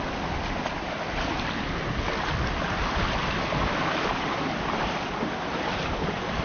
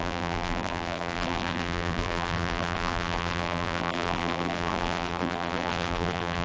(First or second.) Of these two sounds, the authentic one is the first